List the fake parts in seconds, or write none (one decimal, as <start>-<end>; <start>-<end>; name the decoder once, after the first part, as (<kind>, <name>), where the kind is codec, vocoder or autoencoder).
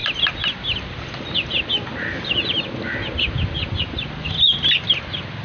none